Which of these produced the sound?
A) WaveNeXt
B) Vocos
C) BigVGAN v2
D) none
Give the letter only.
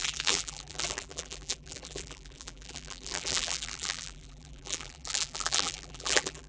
C